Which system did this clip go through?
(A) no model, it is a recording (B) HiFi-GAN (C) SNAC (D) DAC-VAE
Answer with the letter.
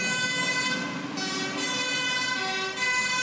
A